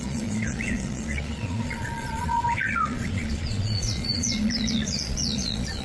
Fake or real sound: fake